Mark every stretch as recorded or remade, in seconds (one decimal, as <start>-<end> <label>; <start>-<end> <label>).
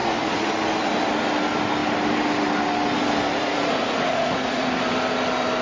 0.0-0.5 remade; 0.5-3.3 recorded; 3.3-4.7 remade; 4.7-5.6 recorded